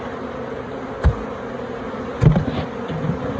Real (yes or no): yes